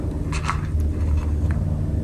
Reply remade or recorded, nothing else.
recorded